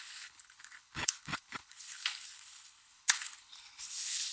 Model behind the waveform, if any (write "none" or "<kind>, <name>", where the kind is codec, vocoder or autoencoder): codec, HILCodec